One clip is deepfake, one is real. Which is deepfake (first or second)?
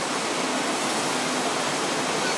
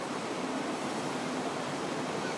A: second